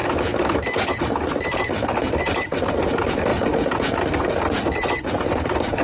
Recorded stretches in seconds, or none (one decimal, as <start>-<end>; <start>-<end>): 3.3-4.6